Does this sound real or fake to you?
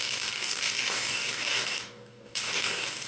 fake